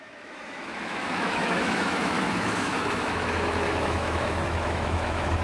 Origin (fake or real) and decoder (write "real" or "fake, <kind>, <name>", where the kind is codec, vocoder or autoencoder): fake, autoencoder, DAC-VAE